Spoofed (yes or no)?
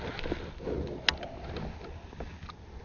no